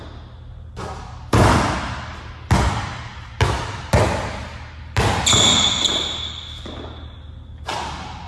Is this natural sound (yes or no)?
yes